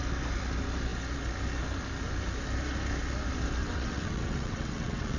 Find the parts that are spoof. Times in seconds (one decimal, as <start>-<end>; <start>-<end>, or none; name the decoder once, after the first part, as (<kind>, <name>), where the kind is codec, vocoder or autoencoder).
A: 3.6-5.2 (vocoder, WaveNeXt)